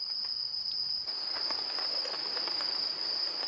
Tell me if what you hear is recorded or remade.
recorded